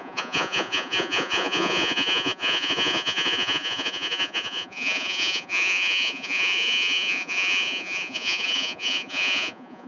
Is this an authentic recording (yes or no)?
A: no